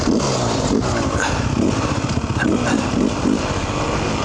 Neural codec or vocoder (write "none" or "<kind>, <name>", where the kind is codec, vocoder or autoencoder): none